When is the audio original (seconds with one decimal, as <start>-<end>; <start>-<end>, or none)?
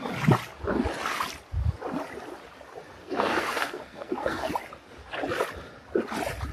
0.0-3.0; 4.5-6.5